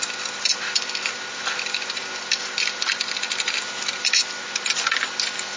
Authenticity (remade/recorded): recorded